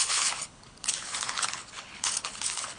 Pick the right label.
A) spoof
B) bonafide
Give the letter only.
A